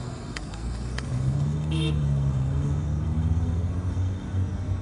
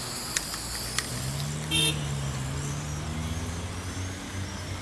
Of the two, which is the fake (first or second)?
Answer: first